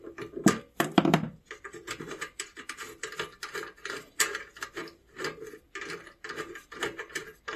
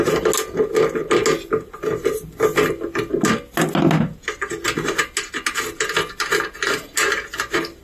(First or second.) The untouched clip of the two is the second